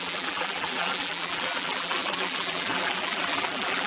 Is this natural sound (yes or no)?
no